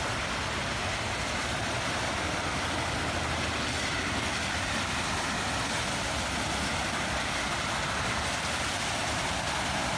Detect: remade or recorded recorded